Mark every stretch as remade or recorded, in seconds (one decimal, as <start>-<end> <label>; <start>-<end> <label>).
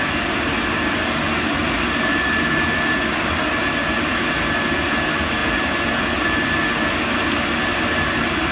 0.0-1.6 recorded; 1.6-3.6 remade; 3.6-8.5 recorded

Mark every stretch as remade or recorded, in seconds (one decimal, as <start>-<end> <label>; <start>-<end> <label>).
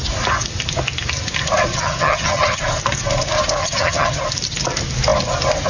0.0-1.7 recorded; 1.7-2.6 remade; 2.6-3.6 recorded; 3.6-4.2 remade; 4.2-5.7 recorded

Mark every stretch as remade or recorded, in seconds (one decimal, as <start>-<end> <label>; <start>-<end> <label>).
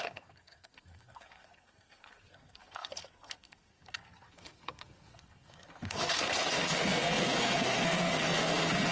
0.0-8.9 remade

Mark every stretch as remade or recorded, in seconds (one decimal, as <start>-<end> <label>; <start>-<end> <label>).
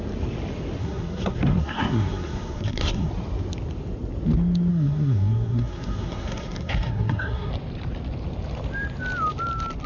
0.0-0.8 recorded; 0.8-3.1 remade; 3.1-4.7 recorded; 4.7-7.5 remade; 7.5-9.9 recorded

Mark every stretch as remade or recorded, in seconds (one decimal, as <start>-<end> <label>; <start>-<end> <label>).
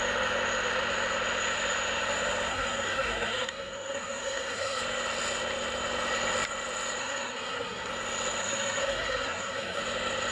0.0-2.5 recorded; 2.5-4.8 remade; 4.8-7.0 recorded; 7.0-7.9 remade; 7.9-8.4 recorded; 8.4-9.8 remade; 9.8-10.3 recorded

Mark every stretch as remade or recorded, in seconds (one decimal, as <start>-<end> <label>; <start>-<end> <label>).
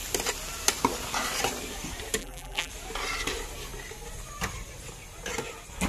0.0-2.2 recorded; 2.2-2.7 remade; 2.7-5.9 recorded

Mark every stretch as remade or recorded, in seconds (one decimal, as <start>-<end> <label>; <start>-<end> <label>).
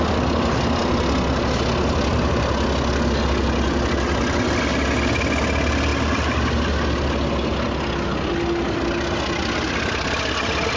0.0-10.8 recorded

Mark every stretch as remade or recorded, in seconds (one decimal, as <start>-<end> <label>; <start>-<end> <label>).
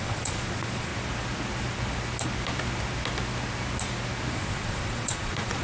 0.0-0.9 remade; 0.9-4.3 recorded; 4.3-5.6 remade